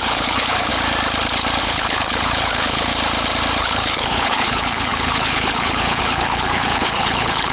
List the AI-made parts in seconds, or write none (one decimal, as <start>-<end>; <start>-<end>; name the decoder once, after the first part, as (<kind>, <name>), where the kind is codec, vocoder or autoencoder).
0.0-0.7 (codec, HILCodec); 1.6-2.9; 3.6-7.5